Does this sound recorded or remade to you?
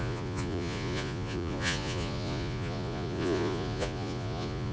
remade